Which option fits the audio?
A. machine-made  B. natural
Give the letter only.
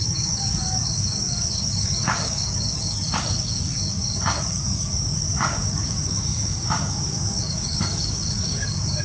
A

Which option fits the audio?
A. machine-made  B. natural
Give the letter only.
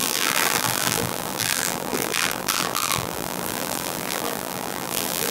A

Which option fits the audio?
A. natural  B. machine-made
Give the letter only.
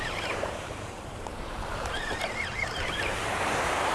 B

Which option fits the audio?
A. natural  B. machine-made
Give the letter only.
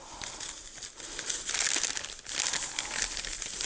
A